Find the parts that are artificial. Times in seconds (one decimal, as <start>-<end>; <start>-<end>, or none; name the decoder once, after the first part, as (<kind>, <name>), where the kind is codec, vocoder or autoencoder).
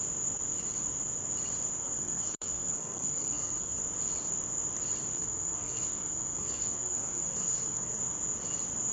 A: 1.8-3.8 (codec, SNAC); 5.1-8.0